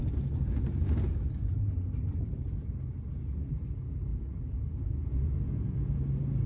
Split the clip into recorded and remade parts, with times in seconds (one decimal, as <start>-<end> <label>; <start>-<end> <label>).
0.0-4.1 recorded; 4.1-6.0 remade; 6.0-6.5 recorded

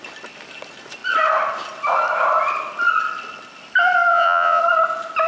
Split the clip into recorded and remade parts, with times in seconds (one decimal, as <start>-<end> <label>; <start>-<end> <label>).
0.0-4.1 recorded; 4.1-4.6 remade; 4.6-5.3 recorded